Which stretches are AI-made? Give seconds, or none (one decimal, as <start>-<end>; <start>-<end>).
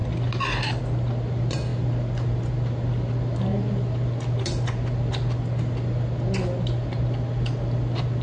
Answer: none